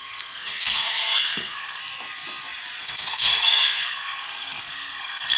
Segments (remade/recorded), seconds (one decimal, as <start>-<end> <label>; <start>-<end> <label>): 0.0-1.8 remade; 1.8-2.8 recorded; 2.8-5.4 remade